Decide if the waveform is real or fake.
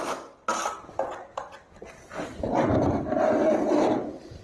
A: real